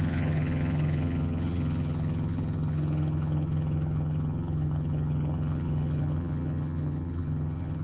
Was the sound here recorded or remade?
remade